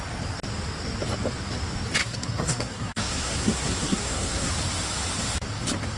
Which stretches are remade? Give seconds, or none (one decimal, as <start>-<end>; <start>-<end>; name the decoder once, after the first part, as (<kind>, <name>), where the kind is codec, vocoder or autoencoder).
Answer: 2.0-4.5 (codec, SNAC)